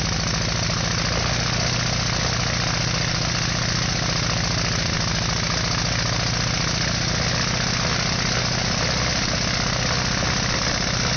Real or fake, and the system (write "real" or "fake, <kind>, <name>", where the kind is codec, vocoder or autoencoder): real